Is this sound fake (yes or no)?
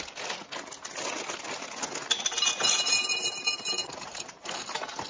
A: no